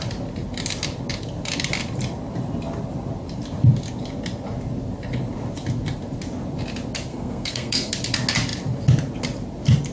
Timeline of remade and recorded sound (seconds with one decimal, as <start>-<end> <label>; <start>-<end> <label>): 0.0-7.1 recorded; 7.1-7.9 remade; 7.9-9.9 recorded